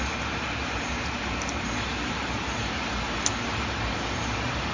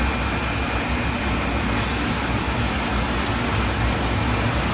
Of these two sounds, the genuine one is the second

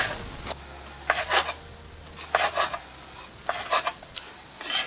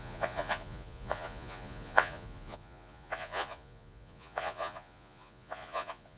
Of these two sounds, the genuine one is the first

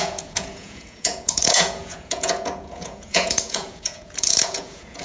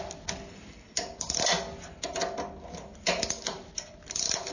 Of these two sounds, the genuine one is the second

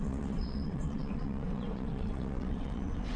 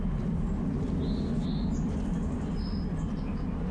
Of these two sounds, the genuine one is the second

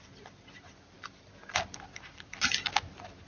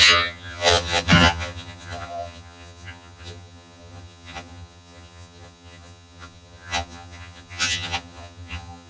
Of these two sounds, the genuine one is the first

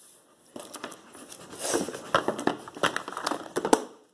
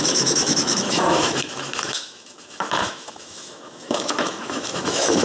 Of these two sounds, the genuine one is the first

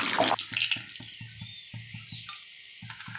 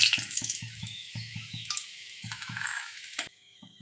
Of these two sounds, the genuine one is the first